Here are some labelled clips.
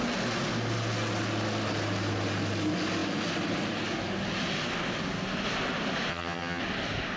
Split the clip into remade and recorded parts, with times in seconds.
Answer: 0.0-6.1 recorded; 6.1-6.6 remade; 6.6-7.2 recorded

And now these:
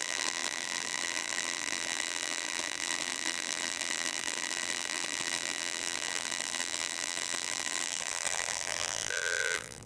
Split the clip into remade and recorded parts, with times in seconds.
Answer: 0.0-9.9 remade

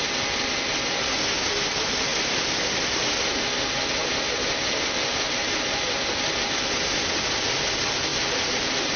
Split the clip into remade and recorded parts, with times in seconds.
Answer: 0.0-8.1 recorded; 8.1-9.0 remade

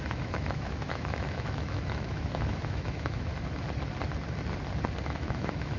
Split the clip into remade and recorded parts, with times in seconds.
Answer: 0.0-3.3 remade; 3.3-5.0 recorded; 5.0-5.8 remade

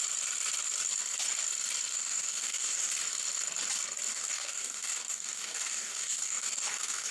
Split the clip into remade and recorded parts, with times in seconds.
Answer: 0.0-1.9 recorded; 1.9-2.9 remade; 2.9-4.1 recorded; 4.1-7.1 remade

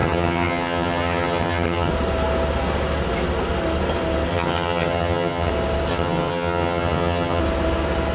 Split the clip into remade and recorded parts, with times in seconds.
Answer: 0.0-1.9 remade; 1.9-4.3 recorded; 4.3-5.5 remade; 5.5-5.9 recorded; 5.9-7.4 remade; 7.4-8.1 recorded

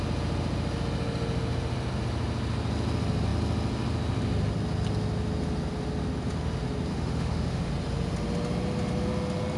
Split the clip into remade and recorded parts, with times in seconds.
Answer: 0.0-6.9 recorded; 6.9-7.7 remade; 7.7-9.6 recorded